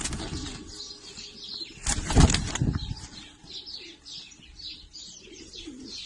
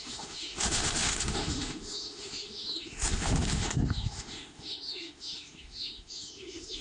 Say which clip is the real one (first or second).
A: first